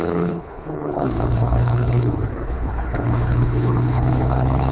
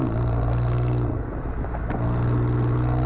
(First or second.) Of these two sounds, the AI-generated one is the first